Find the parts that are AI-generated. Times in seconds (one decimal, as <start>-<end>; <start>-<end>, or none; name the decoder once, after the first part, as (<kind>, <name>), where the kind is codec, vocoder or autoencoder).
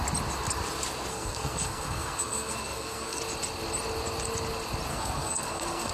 1.1-3.2 (codec, SNAC); 4.9-5.9